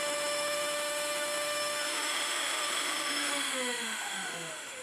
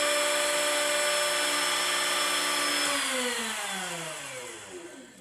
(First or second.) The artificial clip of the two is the first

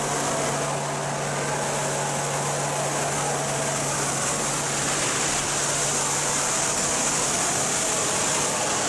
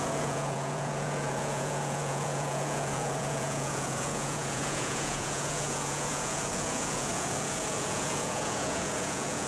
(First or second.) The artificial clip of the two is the second